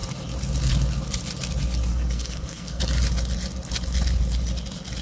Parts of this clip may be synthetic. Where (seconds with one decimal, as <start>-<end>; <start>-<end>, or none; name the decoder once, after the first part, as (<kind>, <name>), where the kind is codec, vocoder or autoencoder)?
1.9-2.8 (codec, SNAC)

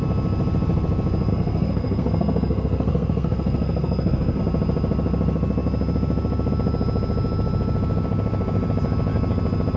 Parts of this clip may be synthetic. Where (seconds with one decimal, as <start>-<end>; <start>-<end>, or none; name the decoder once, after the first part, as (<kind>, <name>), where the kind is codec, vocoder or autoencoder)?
1.3-4.4 (codec, SNAC)

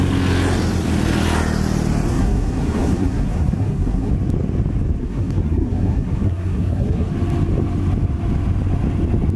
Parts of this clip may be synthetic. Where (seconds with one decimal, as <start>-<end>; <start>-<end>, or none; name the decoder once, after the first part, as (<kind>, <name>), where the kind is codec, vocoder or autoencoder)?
2.1-4.1 (codec, SNAC); 5.0-7.1

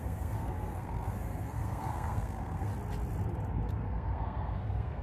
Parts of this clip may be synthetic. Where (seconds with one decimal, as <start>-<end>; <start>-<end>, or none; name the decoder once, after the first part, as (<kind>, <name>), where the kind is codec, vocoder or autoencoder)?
0.0-2.7 (codec, SNAC); 3.7-5.0

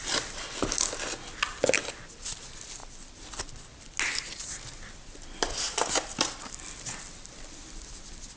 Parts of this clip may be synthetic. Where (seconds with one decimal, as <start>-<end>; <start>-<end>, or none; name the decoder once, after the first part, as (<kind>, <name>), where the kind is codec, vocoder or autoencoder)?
none

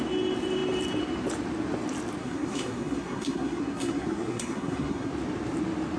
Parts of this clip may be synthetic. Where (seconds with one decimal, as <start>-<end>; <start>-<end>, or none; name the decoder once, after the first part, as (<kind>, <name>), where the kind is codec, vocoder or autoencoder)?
2.2-5.1 (codec, SNAC)

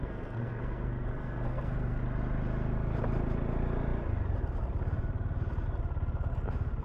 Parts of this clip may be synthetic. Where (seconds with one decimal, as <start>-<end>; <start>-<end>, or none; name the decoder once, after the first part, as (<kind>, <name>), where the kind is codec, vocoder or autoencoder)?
0.0-2.0 (codec, SNAC)